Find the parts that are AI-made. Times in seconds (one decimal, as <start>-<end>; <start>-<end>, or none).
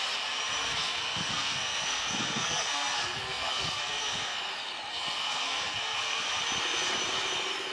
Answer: 0.6-4.5; 4.9-6.4